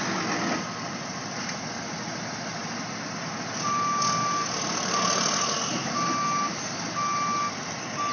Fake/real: real